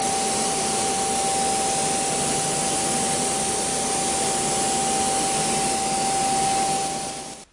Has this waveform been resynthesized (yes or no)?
no